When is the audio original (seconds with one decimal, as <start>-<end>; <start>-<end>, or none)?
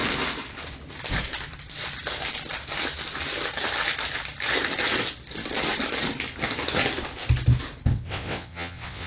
0.0-7.9